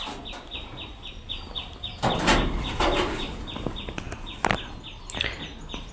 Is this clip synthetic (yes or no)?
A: no